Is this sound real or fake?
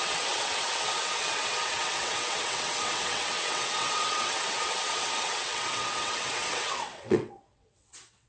fake